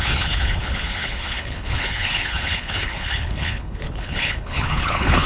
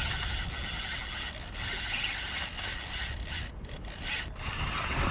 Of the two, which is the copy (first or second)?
first